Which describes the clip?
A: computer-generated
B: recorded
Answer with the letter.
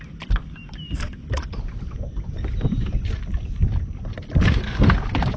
A